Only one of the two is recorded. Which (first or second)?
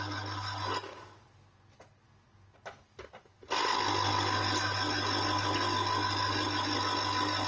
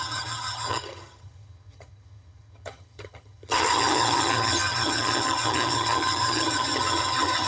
first